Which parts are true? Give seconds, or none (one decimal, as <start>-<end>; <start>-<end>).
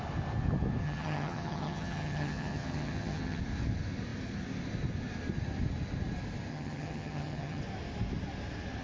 0.0-0.8; 3.4-6.5; 7.6-8.8